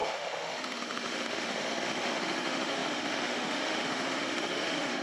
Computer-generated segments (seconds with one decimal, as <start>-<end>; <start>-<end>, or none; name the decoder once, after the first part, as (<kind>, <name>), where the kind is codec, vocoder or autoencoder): 0.0-5.0 (autoencoder, DAC-VAE)